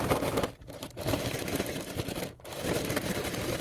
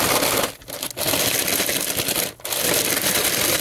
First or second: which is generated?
first